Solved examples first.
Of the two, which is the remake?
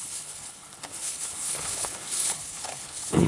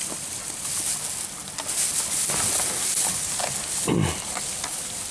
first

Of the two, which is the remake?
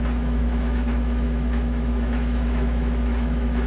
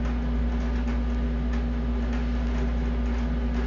first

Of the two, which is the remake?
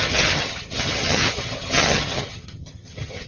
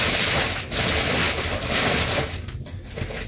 first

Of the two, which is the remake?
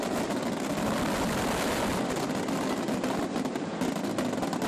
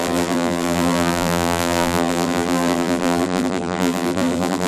second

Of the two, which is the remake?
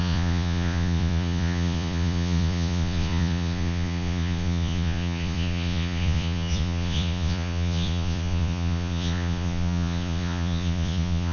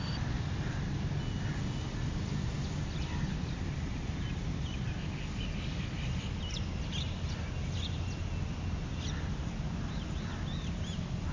first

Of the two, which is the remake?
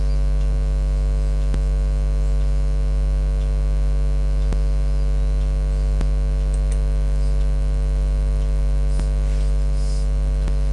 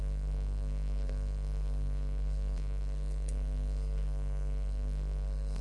second